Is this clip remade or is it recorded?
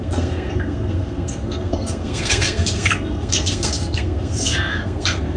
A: remade